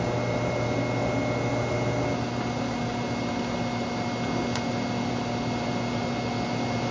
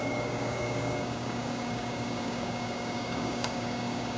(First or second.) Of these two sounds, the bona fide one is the first